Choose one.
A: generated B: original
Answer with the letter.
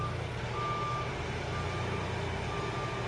B